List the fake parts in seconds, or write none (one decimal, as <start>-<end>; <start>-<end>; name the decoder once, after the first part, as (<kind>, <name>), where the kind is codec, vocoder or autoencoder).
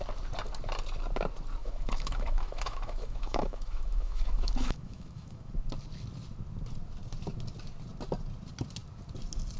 1.6-5.5 (autoencoder, DAC-VAE)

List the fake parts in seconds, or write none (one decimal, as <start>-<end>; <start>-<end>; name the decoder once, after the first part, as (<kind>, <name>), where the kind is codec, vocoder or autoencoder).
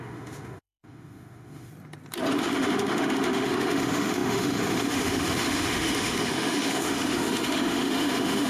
0.0-1.7 (autoencoder, DAC-VAE); 2.4-8.5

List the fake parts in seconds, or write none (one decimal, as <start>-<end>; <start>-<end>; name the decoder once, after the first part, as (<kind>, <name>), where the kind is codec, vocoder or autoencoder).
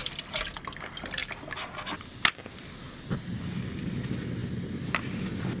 none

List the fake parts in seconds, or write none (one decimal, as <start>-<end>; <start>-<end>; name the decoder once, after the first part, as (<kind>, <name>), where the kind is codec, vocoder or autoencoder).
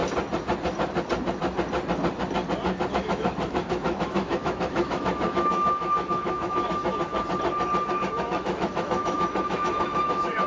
2.9-7.2 (autoencoder, DAC-VAE); 7.9-10.5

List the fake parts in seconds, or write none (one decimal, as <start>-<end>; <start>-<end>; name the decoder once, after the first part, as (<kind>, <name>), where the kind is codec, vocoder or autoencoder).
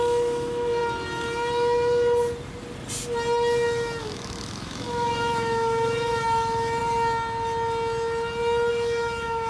0.0-0.8 (autoencoder, DAC-VAE); 4.0-6.8; 8.7-9.5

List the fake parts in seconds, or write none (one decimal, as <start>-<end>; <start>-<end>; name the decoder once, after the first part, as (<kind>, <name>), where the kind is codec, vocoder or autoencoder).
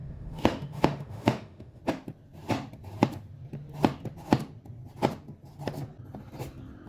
0.0-1.8 (autoencoder, DAC-VAE)